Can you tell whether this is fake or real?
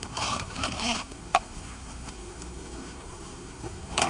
fake